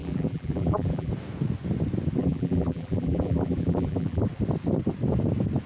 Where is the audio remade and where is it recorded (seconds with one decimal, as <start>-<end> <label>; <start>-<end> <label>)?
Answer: 0.0-1.1 remade; 1.1-2.2 recorded; 2.2-4.2 remade; 4.2-5.7 recorded